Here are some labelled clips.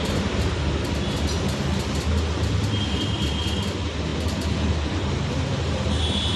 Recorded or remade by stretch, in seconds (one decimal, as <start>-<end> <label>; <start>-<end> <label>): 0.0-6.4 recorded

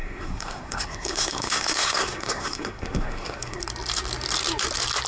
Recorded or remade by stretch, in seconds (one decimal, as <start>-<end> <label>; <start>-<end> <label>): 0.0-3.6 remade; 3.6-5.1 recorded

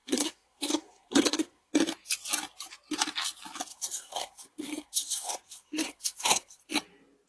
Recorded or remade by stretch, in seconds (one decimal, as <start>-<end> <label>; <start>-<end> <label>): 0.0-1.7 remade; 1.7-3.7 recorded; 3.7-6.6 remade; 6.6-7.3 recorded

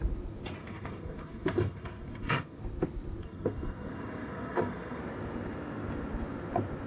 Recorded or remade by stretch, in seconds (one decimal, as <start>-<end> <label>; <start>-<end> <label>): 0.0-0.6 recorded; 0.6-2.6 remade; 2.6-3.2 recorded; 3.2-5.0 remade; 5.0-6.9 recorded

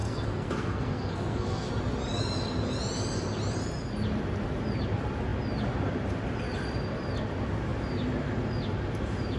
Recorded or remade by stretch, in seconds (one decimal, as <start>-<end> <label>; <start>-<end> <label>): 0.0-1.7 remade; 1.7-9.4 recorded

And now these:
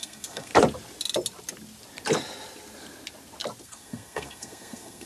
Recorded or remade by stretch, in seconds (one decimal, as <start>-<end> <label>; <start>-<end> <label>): 0.0-0.5 remade; 0.5-3.6 recorded; 3.6-5.1 remade

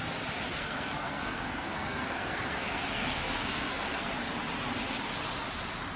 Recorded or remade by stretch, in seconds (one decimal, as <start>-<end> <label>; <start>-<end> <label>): 0.0-0.5 recorded; 0.5-4.1 remade; 4.1-6.0 recorded